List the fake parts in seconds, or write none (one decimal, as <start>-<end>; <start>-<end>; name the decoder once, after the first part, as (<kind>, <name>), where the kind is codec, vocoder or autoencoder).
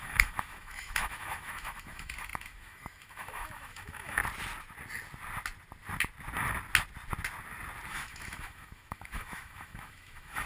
0.0-4.2 (autoencoder, DAC-VAE); 7.9-10.5